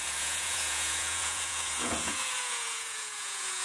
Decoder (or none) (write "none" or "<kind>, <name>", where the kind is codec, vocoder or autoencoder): vocoder, Vocos